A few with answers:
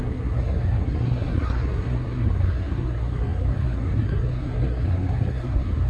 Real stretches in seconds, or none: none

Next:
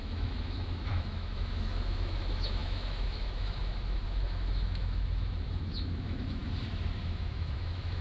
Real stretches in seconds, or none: 6.4-7.0

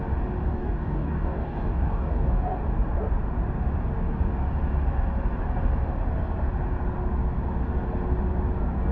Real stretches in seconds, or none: 0.0-0.5; 2.6-8.9

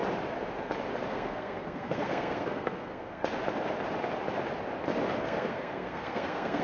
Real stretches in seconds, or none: 0.0-1.1; 3.2-5.2

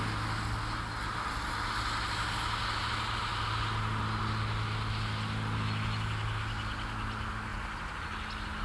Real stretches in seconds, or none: 0.0-8.6